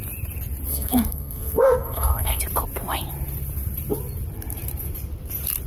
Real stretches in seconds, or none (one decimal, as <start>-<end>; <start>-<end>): 0.0-0.7; 2.4-5.7